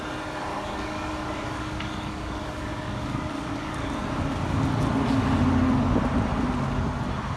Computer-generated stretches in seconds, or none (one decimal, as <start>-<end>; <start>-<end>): 0.5-3.9